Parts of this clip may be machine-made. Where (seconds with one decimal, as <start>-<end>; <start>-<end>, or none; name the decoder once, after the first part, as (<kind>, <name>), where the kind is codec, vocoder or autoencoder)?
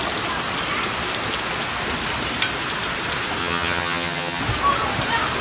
3.4-4.4 (vocoder, HiFi-GAN)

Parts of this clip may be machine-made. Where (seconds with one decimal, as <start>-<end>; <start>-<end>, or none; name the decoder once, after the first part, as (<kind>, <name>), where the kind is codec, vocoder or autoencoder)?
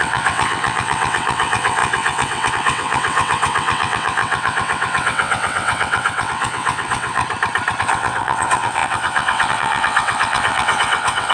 0.0-7.2 (vocoder, WaveNeXt); 7.8-11.3